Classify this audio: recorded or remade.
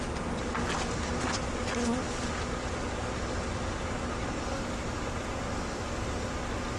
recorded